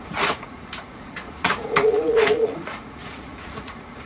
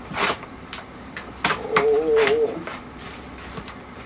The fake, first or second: first